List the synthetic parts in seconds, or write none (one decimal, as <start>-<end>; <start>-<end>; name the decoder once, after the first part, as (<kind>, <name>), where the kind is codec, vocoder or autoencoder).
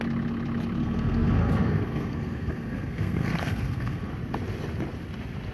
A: 0.8-4.1 (codec, SNAC)